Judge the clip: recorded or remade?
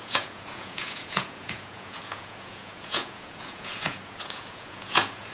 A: remade